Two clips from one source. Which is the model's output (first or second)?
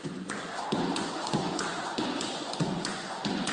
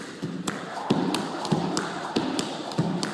first